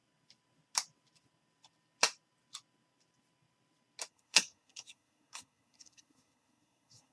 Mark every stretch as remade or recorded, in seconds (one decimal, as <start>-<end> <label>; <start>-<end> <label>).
0.0-4.1 recorded; 4.1-7.1 remade